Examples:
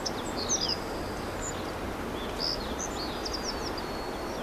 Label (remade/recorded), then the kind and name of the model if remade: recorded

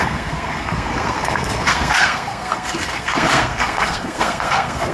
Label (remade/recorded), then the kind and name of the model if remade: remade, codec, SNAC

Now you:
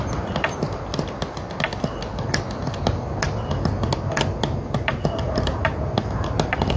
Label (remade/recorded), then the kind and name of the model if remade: recorded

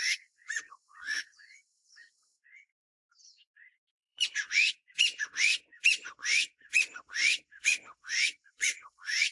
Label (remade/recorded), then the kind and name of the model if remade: remade, vocoder, Vocos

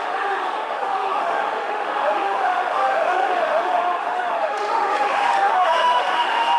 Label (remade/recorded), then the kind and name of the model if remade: remade, autoencoder, DAC-VAE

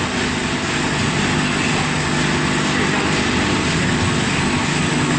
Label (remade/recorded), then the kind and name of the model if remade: recorded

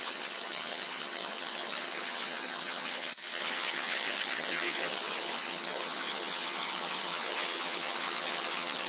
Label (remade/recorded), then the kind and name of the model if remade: remade, vocoder, HiFi-GAN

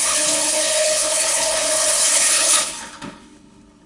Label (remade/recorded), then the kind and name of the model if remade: remade, codec, HILCodec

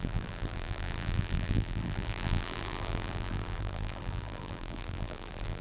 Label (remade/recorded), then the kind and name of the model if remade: remade, vocoder, BigVGAN v2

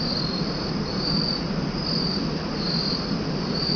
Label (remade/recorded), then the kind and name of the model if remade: recorded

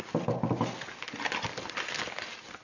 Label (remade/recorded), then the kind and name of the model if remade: recorded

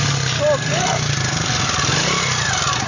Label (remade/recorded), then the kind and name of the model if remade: recorded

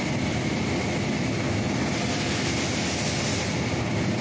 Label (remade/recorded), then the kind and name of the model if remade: recorded